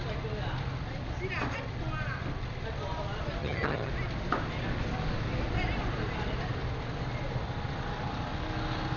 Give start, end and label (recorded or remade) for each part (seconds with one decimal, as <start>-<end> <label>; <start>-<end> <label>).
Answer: 0.0-3.4 recorded; 3.4-3.9 remade; 3.9-9.0 recorded